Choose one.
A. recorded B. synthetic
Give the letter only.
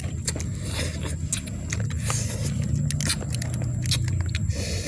A